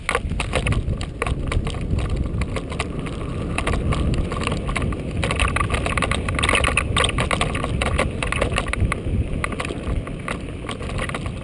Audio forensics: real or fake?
real